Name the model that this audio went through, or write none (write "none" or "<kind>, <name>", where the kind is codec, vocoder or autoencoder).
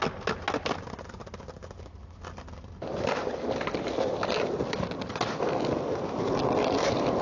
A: none